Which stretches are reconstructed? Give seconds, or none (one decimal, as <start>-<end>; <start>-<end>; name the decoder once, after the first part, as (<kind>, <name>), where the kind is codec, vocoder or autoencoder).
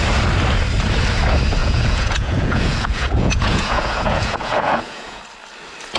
1.6-5.2 (vocoder, Vocos)